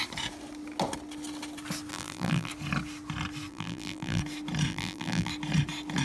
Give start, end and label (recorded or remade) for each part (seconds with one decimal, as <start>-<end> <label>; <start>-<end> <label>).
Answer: 0.0-1.9 recorded; 1.9-2.5 remade; 2.5-3.5 recorded; 3.5-4.2 remade; 4.2-4.7 recorded; 4.7-5.3 remade; 5.3-6.0 recorded